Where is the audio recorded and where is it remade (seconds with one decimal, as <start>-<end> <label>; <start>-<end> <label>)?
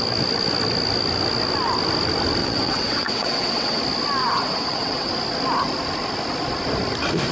0.0-2.4 recorded; 2.4-3.8 remade; 3.8-4.2 recorded; 4.2-5.1 remade; 5.1-7.3 recorded